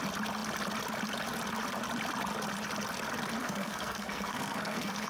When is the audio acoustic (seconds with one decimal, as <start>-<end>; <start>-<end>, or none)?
0.0-3.4